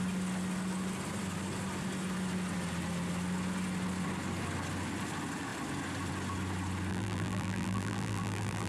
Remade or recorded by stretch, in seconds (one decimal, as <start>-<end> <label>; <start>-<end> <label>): 0.0-6.9 recorded; 6.9-8.7 remade